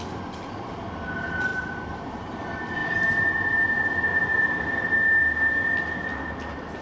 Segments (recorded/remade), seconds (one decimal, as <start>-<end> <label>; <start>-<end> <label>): 0.0-1.5 recorded; 1.5-2.4 remade; 2.4-2.8 recorded; 2.8-3.3 remade; 3.3-4.1 recorded; 4.1-4.6 remade; 4.6-6.8 recorded